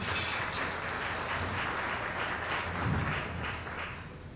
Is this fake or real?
real